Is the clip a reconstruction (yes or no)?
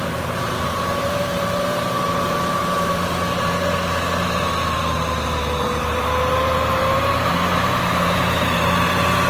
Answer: yes